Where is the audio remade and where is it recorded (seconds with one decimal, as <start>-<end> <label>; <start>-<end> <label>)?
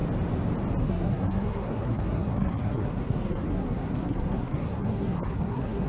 0.0-0.8 recorded; 0.8-5.9 remade